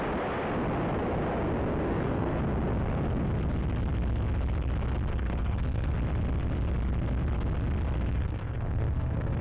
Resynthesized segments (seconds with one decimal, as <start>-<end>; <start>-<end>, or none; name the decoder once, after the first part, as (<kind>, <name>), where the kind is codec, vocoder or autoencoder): 1.9-2.4 (codec, SNAC); 5.1-5.9; 8.1-9.4